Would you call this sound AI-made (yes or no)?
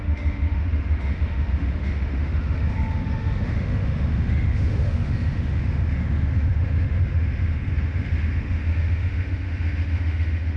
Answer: yes